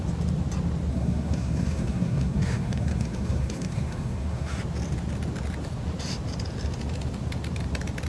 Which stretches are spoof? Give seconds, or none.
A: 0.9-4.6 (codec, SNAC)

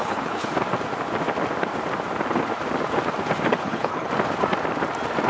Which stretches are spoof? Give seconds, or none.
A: 0.0-0.5 (codec, HILCodec); 3.5-4.1

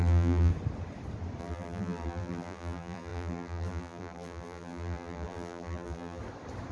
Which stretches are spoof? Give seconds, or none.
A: 0.0-0.5 (vocoder, BigVGAN v2); 1.4-6.2

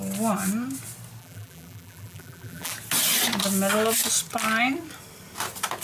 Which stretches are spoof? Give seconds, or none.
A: 1.2-2.7 (vocoder, BigVGAN v2)

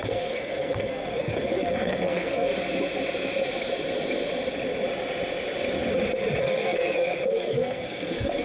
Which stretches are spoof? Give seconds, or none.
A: 0.0-2.5 (codec, SNAC); 6.4-8.4

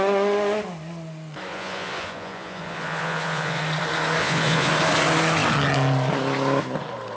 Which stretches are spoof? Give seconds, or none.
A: 1.5-3.6 (vocoder, Vocos); 4.2-4.7

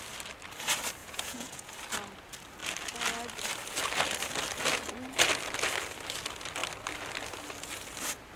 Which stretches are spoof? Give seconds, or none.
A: 1.0-1.7 (vocoder, Vocos)